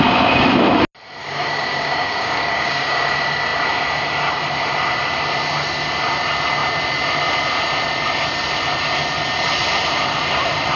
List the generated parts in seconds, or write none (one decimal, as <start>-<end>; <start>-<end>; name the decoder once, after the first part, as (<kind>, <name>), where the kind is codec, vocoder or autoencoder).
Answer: 1.2-3.1 (codec, DAC)

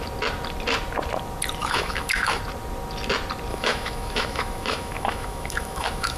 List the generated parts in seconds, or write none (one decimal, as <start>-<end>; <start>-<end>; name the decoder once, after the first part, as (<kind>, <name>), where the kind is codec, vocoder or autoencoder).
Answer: 1.6-2.4 (autoencoder, DAC-VAE); 3.5-6.2